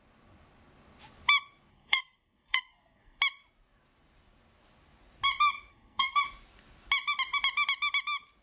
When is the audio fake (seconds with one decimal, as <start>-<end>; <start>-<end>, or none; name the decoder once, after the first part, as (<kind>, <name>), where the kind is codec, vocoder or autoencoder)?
1.7-3.2 (codec, SNAC); 5.7-6.2